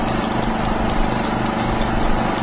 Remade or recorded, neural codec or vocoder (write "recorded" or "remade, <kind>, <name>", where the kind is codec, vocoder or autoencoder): recorded